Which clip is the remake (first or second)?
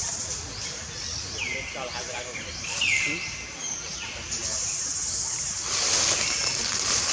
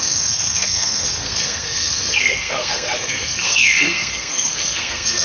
second